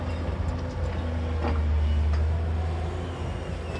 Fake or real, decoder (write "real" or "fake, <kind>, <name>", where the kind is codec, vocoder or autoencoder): real